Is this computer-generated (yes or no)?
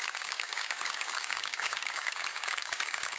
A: yes